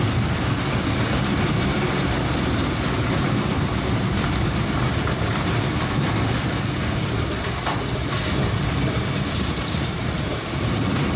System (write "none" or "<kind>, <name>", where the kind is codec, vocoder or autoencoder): none